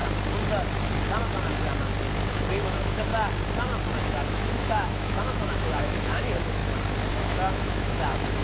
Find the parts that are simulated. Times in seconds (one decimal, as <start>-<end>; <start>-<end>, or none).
2.5-3.1; 4.0-6.6; 7.1-8.4